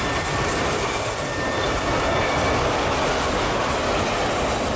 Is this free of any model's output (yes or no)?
yes